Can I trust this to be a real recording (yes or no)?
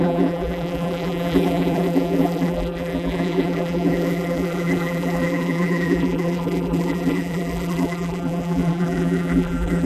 no